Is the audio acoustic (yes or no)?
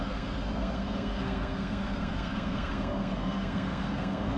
no